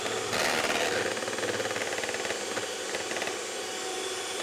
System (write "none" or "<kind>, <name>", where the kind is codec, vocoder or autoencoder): none